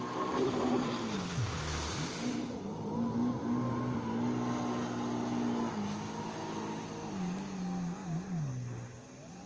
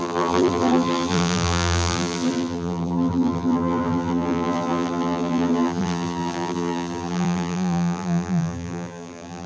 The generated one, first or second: second